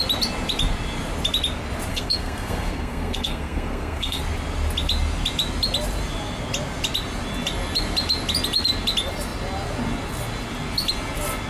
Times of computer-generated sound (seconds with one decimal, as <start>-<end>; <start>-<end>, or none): 1.9-4.2